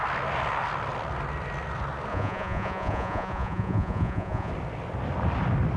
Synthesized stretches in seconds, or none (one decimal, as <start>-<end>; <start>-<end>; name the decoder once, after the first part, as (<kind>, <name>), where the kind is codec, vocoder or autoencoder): 2.1-4.5 (vocoder, Vocos)